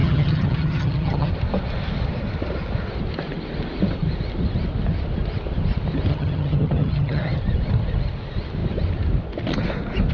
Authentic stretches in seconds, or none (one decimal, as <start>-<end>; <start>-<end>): 1.3-6.1; 7.4-10.1